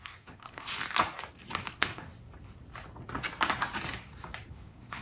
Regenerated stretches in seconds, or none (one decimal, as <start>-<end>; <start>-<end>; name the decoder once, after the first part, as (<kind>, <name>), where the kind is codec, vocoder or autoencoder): 0.0-0.7 (codec, SNAC); 1.7-2.1; 4.5-5.0